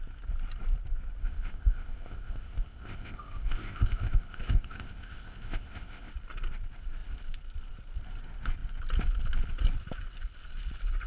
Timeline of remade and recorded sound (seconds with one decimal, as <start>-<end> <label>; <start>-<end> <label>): 0.0-1.2 recorded; 1.2-6.1 remade; 6.1-11.1 recorded